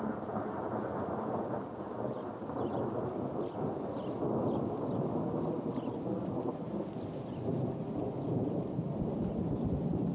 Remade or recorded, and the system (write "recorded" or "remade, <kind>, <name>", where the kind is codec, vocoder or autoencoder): recorded